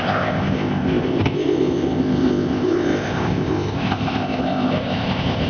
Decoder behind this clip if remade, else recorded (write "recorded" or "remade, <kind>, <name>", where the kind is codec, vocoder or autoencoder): remade, codec, ZipCodec